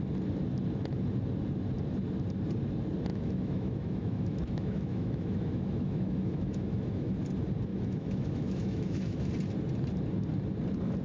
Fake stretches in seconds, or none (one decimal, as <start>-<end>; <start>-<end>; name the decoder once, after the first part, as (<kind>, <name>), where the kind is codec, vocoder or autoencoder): 3.1-7.1 (autoencoder, DAC-VAE); 7.7-9.3